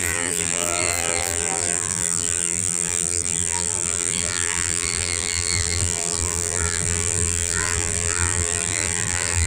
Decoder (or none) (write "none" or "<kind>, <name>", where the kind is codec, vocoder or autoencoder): vocoder, BigVGAN v2